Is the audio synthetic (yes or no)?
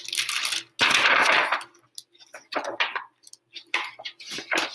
no